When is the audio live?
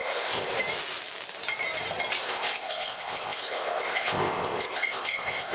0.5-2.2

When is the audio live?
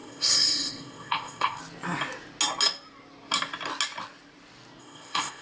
1.6-4.8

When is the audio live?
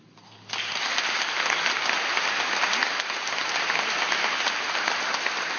0.0-5.6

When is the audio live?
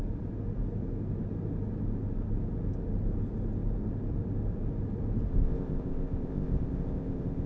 0.0-5.3